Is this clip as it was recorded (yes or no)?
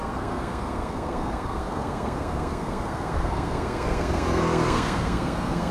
no